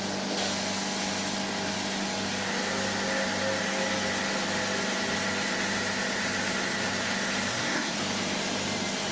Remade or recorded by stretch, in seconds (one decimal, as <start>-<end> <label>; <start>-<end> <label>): 0.0-7.5 recorded; 7.5-8.0 remade; 8.0-9.1 recorded